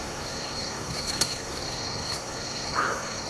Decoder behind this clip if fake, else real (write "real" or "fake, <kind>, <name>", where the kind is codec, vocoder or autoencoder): fake, codec, SNAC